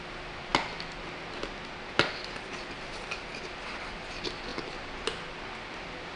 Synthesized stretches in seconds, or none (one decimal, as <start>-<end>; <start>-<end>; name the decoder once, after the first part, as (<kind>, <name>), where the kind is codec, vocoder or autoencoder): none